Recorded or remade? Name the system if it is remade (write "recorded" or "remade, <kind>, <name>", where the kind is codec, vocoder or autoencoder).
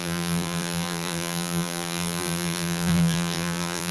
remade, vocoder, BigVGAN v2